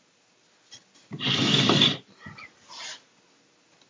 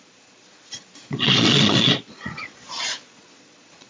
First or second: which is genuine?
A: first